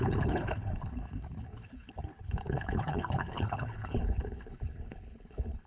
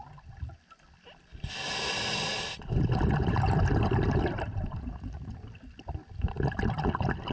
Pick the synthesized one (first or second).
first